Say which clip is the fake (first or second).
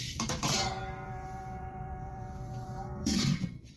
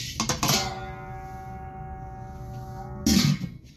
first